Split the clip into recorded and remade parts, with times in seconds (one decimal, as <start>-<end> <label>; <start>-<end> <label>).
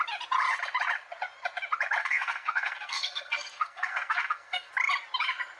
0.0-2.0 recorded; 2.0-4.7 remade; 4.7-5.6 recorded